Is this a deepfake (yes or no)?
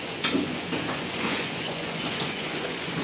yes